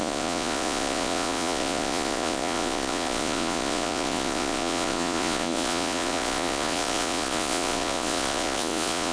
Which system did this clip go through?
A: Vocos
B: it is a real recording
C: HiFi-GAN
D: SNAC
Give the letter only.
A